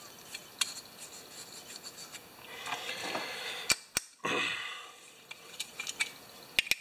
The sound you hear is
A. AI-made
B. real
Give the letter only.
B